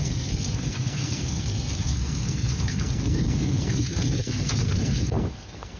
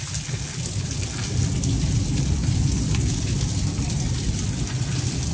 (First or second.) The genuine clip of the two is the second